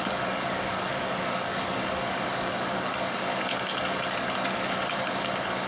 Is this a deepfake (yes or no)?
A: yes